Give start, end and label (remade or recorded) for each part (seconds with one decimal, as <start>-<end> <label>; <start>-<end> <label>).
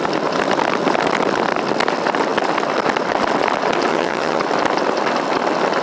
0.0-3.9 recorded; 3.9-4.4 remade; 4.4-5.8 recorded